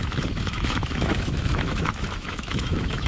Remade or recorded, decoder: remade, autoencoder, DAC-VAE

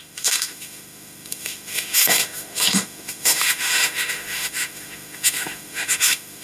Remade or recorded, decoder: remade, autoencoder, DAC-VAE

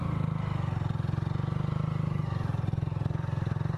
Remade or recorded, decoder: recorded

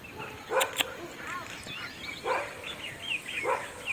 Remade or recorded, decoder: recorded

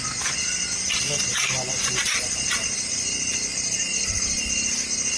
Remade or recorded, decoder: recorded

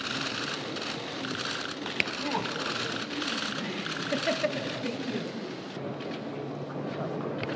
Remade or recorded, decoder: recorded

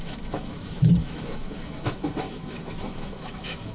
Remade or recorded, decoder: remade, autoencoder, DAC-VAE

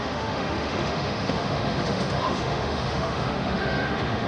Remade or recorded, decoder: remade, autoencoder, DAC-VAE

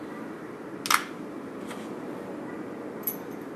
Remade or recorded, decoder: recorded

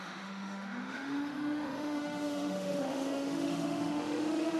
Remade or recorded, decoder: remade, autoencoder, DAC-VAE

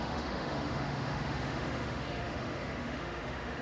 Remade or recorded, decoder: remade, autoencoder, DAC-VAE